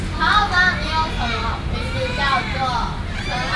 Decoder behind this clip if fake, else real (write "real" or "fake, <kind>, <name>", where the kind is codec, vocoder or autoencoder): real